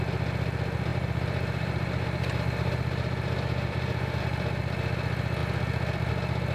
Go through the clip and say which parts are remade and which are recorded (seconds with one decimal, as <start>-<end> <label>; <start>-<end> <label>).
0.0-0.9 recorded; 0.9-4.2 remade; 4.2-6.5 recorded